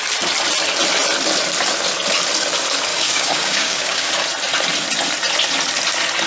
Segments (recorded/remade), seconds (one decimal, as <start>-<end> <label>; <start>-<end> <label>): 0.0-2.9 recorded; 2.9-4.1 remade; 4.1-6.3 recorded